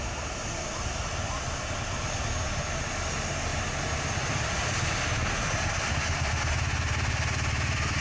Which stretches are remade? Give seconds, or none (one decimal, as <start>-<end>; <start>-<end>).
none